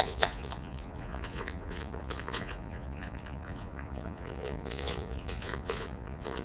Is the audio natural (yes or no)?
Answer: no